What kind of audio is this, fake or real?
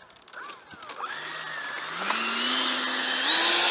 real